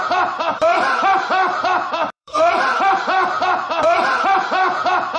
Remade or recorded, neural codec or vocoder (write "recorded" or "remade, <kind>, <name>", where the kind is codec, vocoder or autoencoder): remade, vocoder, BigVGAN v2